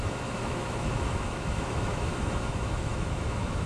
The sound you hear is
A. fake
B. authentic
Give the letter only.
A